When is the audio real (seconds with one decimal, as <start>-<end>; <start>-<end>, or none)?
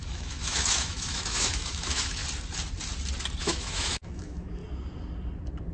2.2-3.4; 4.6-5.7